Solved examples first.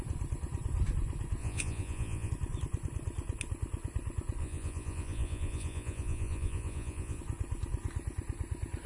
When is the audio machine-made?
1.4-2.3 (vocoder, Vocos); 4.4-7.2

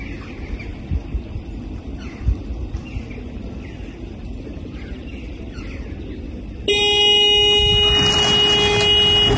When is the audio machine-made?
none

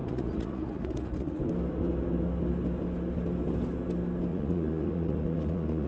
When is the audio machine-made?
0.0-1.4 (vocoder, Vocos); 4.3-5.9

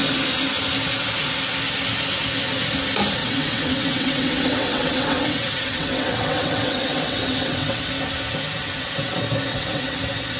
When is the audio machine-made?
3.2-7.9 (vocoder, WaveNeXt); 8.6-9.1; 9.5-10.0

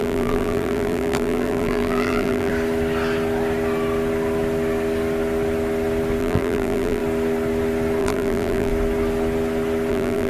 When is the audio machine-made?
0.0-2.5 (vocoder, BigVGAN v2); 6.2-7.0; 8.0-8.7; 9.9-10.3

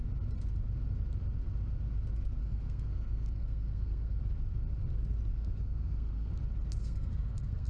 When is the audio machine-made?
2.4-4.2 (codec, SNAC); 5.3-6.3; 6.8-7.7